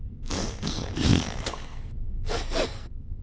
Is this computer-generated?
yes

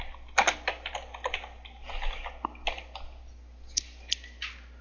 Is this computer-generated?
no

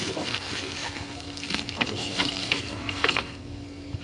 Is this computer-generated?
yes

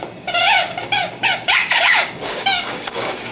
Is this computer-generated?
yes